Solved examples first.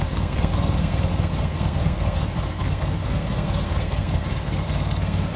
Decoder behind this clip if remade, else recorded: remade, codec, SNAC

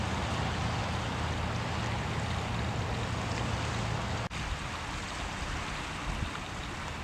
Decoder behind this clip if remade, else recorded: recorded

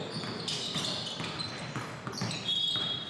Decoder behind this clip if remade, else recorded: recorded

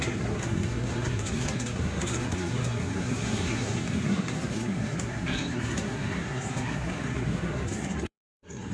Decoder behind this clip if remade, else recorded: remade, codec, SNAC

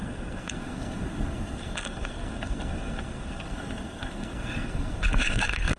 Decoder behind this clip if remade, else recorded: remade, codec, SNAC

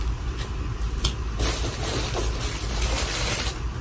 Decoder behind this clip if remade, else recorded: recorded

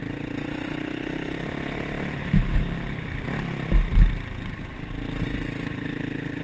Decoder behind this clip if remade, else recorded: recorded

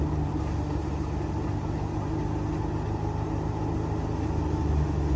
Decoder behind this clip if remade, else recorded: recorded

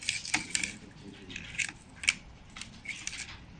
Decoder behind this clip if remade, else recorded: recorded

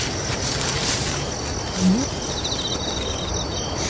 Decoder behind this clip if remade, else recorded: recorded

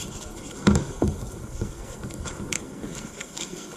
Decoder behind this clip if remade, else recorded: remade, codec, SNAC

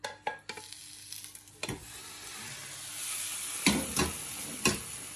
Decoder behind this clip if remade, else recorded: recorded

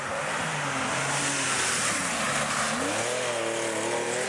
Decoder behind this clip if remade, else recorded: recorded